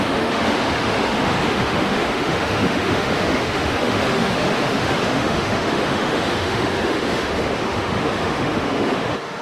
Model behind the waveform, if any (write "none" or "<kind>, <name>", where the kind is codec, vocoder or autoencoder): autoencoder, DAC-VAE